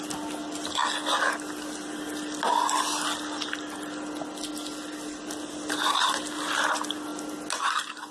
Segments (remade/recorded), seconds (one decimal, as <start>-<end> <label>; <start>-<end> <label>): 0.0-8.1 recorded